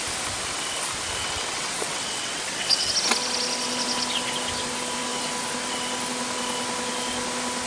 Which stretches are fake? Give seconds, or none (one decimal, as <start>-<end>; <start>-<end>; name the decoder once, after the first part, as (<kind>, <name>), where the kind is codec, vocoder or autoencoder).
1.2-2.9 (vocoder, WaveNeXt)